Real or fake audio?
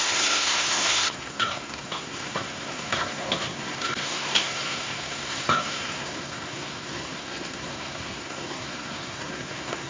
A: fake